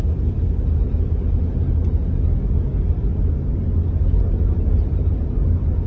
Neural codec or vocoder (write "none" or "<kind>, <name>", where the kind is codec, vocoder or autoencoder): none